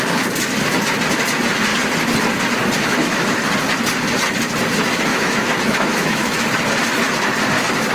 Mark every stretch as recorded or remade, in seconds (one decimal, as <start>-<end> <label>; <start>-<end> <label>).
0.0-2.8 recorded; 2.8-3.4 remade; 3.4-5.1 recorded; 5.1-6.6 remade; 6.6-7.9 recorded